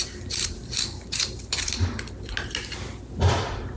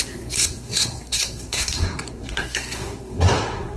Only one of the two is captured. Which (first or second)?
first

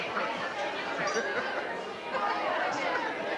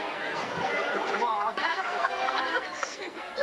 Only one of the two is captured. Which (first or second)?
first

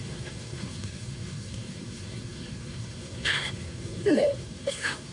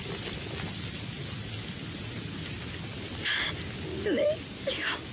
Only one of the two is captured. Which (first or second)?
second